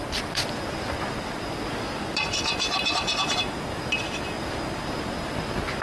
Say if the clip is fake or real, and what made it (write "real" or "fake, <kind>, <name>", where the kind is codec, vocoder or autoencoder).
real